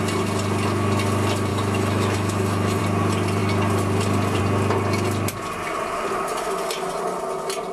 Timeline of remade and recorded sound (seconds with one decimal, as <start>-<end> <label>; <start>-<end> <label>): 0.0-1.5 recorded; 1.5-2.8 remade; 2.8-7.7 recorded